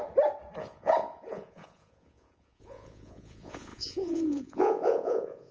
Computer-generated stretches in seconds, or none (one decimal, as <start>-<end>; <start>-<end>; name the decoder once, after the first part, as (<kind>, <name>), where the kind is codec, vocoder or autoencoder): 0.6-5.5 (vocoder, Vocos)